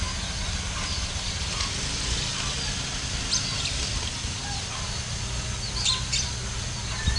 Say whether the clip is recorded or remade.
recorded